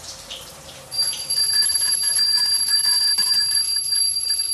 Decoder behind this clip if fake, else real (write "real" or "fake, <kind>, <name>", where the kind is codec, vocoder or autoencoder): fake, vocoder, BigVGAN v2